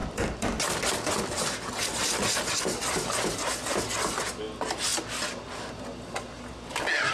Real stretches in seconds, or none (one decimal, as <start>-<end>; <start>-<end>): 0.0-7.1